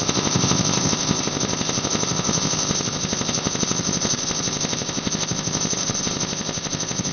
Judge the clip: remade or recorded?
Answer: remade